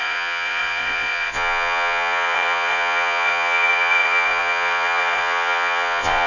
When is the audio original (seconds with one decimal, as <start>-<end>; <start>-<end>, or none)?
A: none